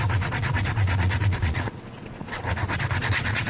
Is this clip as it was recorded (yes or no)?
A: no